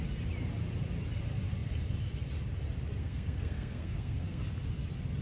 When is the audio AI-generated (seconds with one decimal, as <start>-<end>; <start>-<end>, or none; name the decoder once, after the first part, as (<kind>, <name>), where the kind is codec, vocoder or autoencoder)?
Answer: 3.0-4.4 (codec, SNAC)